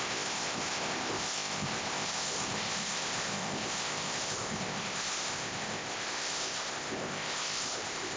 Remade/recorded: remade